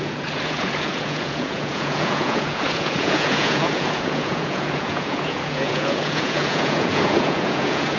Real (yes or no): no